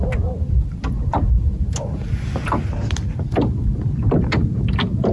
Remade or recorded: recorded